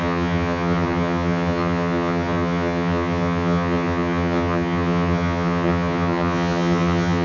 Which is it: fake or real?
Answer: fake